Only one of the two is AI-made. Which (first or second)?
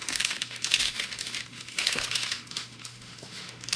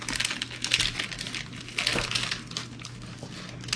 first